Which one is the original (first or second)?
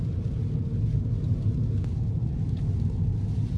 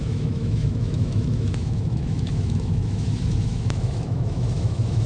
first